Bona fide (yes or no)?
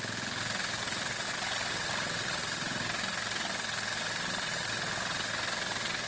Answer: yes